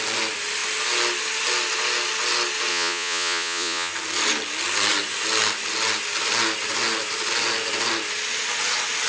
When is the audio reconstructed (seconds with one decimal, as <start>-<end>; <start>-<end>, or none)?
2.7-3.9